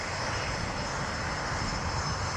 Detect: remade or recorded recorded